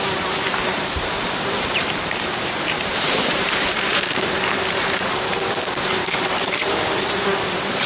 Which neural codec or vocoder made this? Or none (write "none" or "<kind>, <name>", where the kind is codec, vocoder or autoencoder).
vocoder, BigVGAN v2